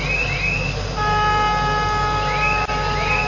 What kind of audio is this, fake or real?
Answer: real